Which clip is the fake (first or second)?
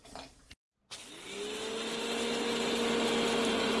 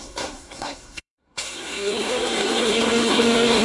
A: second